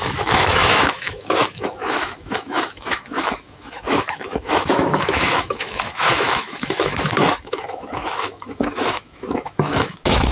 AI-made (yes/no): yes